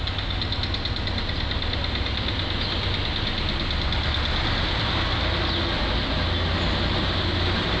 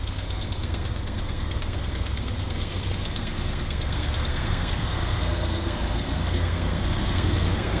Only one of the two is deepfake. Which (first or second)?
second